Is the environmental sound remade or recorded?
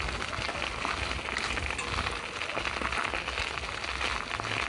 recorded